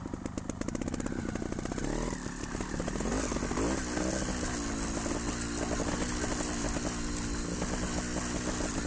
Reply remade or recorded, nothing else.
recorded